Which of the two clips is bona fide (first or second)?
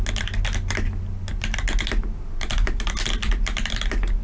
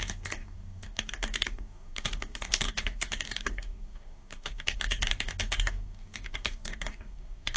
first